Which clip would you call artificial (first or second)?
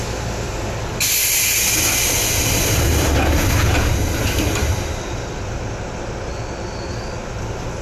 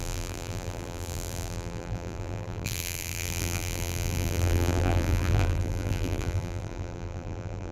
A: second